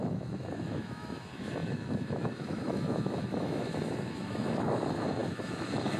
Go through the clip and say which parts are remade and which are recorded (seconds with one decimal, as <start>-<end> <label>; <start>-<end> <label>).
0.0-6.0 remade

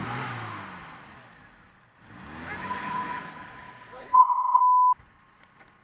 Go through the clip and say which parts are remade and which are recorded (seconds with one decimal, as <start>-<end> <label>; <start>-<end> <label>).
0.0-2.6 recorded; 2.6-4.6 remade; 4.6-5.8 recorded

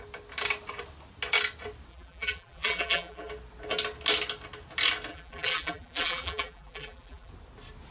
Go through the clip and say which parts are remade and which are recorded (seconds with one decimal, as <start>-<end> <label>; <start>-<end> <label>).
0.0-1.9 recorded; 1.9-3.3 remade; 3.3-5.1 recorded; 5.1-7.3 remade; 7.3-7.9 recorded

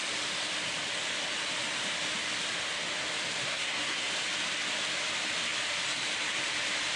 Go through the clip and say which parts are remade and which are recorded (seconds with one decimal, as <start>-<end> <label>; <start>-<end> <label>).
0.0-3.5 recorded; 3.5-4.1 remade; 4.1-7.0 recorded